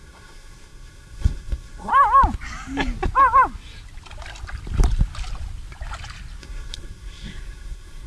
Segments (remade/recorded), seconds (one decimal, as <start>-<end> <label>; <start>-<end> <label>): 0.0-1.9 remade; 1.9-6.4 recorded; 6.4-8.1 remade